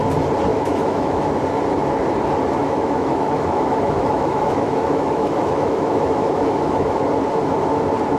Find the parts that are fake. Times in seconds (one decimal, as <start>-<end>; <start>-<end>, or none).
0.5-1.4; 2.6-7.0